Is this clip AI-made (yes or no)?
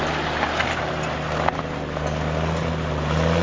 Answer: no